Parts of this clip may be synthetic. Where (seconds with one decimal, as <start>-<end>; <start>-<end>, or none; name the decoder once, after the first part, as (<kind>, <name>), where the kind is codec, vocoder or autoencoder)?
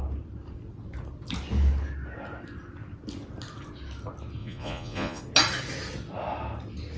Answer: 4.4-5.2 (vocoder, Vocos)